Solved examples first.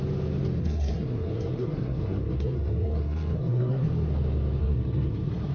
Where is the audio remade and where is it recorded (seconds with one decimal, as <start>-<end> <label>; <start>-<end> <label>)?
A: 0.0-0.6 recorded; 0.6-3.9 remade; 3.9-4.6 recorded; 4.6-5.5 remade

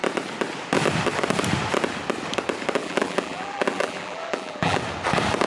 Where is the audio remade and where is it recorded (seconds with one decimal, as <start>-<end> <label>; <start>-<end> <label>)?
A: 0.0-2.8 recorded; 2.8-4.8 remade; 4.8-5.5 recorded

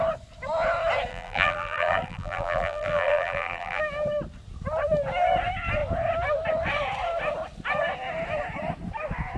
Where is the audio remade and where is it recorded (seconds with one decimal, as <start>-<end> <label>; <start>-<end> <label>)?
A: 0.0-1.1 recorded; 1.1-3.8 remade; 3.8-9.4 recorded

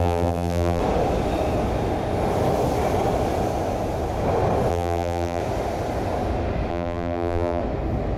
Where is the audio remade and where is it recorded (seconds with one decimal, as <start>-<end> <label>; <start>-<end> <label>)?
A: 0.0-0.8 remade; 0.8-4.7 recorded; 4.7-5.4 remade; 5.4-6.7 recorded; 6.7-7.6 remade; 7.6-8.2 recorded

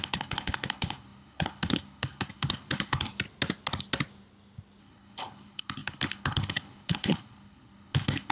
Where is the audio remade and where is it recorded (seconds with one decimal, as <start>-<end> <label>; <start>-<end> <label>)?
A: 0.0-3.1 remade; 3.1-4.8 recorded; 4.8-8.3 remade

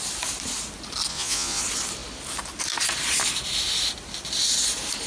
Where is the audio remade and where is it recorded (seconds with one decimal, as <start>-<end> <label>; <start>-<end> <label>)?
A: 0.0-1.1 recorded; 1.1-1.6 remade; 1.6-5.1 recorded